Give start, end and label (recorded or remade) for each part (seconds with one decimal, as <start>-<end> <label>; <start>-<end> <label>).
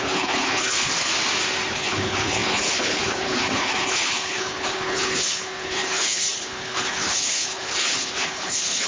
0.0-1.1 remade; 1.1-1.7 recorded; 1.7-8.9 remade